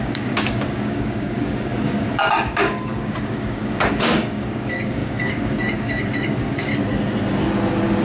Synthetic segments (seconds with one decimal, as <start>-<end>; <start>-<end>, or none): 0.0-6.7